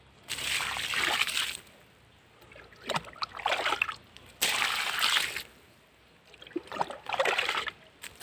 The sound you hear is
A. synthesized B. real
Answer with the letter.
B